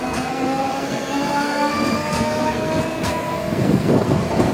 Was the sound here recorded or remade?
remade